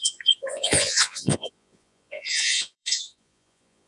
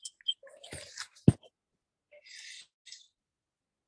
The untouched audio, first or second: second